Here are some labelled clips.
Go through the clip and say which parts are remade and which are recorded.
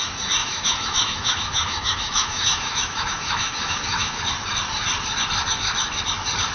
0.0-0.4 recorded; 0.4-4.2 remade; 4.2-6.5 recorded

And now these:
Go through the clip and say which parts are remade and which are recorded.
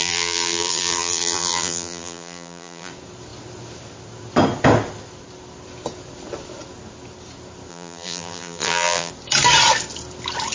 0.0-2.9 remade; 2.9-7.7 recorded; 7.7-9.1 remade; 9.1-10.5 recorded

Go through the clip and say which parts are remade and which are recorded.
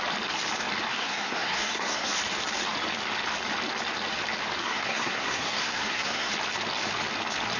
0.0-0.9 recorded; 0.9-2.1 remade; 2.1-4.6 recorded; 4.6-6.3 remade; 6.3-7.6 recorded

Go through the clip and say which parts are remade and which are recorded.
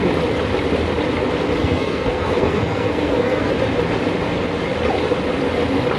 0.0-1.6 recorded; 1.6-3.5 remade; 3.5-6.0 recorded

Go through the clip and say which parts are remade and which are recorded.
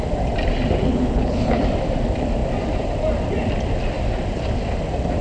0.0-0.9 recorded; 0.9-1.6 remade; 1.6-5.2 recorded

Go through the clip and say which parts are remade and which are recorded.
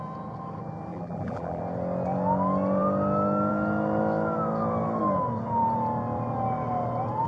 0.0-0.9 recorded; 0.9-1.6 remade; 1.6-7.3 recorded